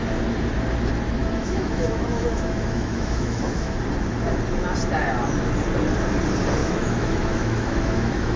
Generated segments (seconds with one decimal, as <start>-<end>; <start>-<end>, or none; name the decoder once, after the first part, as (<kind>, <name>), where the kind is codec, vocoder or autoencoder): 1.2-3.8 (autoencoder, DAC-VAE); 6.6-8.4